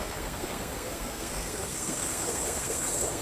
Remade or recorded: remade